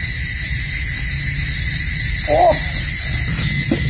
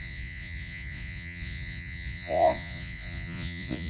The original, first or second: first